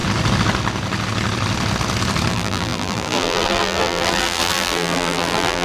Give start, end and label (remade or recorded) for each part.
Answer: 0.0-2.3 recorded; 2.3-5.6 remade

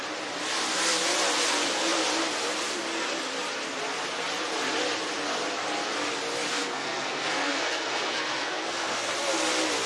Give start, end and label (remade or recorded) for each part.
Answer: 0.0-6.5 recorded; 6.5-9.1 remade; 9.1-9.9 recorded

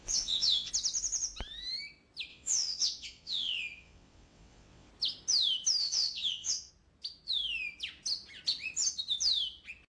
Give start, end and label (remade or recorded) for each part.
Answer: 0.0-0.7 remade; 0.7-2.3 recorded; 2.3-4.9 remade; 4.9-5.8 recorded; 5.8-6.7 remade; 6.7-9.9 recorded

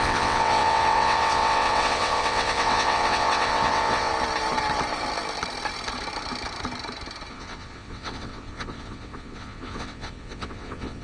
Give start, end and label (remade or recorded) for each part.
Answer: 0.0-4.1 remade; 4.1-7.3 recorded; 7.3-11.0 remade

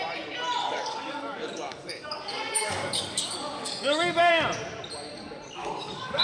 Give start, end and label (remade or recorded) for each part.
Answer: 0.0-0.6 recorded; 0.6-4.3 remade; 4.3-5.6 recorded; 5.6-6.2 remade

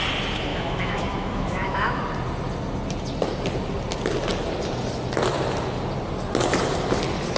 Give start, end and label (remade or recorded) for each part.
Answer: 0.0-0.5 recorded; 0.5-2.0 remade; 2.0-7.4 recorded